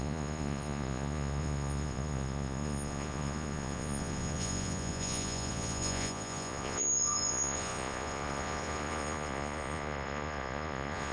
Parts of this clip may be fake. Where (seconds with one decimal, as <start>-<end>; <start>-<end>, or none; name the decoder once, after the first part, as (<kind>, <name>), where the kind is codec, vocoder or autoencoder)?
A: 0.0-11.1 (vocoder, Vocos)